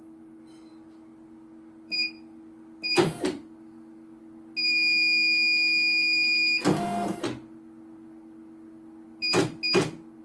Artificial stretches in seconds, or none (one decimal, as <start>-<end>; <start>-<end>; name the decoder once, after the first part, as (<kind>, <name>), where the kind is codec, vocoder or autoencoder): none